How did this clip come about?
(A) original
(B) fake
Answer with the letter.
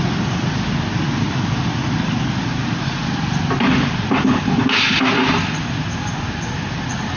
A